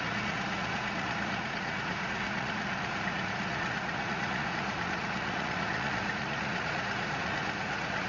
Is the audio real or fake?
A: fake